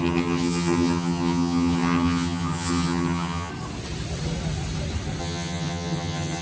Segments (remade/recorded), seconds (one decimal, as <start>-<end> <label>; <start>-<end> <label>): 0.0-3.5 remade; 3.5-5.2 recorded; 5.2-6.4 remade